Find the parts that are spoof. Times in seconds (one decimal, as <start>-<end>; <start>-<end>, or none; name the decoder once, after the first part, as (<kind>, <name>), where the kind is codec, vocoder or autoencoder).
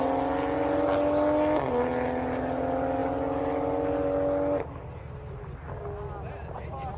none